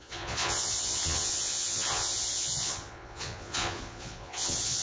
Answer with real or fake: fake